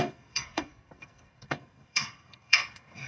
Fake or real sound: fake